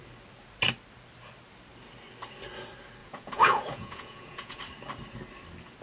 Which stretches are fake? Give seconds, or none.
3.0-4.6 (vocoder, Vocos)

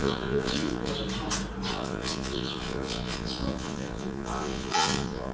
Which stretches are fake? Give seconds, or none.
0.0-0.9 (vocoder, Vocos); 1.7-5.3

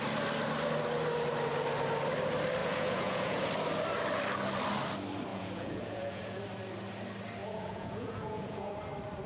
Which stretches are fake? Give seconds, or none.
2.6-3.5 (vocoder, Vocos); 5.3-6.4; 7.4-8.7

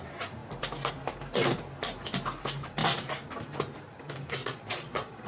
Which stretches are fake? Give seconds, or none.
4.4-5.3 (vocoder, Vocos)

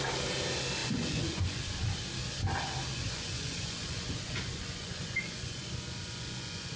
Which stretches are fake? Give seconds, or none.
0.8-1.6 (vocoder, Vocos); 2.9-6.8

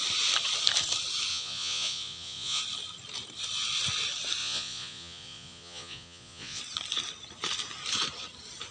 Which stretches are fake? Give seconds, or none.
1.3-2.6 (vocoder, Vocos); 4.4-6.6

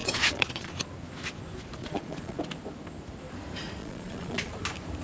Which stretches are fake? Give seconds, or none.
0.0-0.7 (vocoder, Vocos); 1.8-2.4; 3.8-4.5

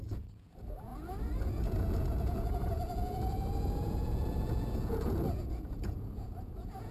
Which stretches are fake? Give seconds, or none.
0.0-0.9 (vocoder, Vocos); 1.5-6.9